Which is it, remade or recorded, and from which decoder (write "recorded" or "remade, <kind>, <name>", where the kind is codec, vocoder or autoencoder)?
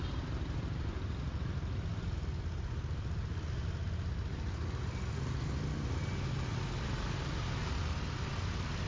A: recorded